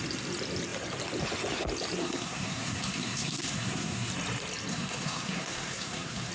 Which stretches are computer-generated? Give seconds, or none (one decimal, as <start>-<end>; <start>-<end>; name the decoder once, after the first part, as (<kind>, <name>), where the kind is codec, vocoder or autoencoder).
2.0-4.1 (codec, SNAC); 4.7-6.3